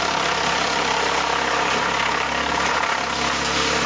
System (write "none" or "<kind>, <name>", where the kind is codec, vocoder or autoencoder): none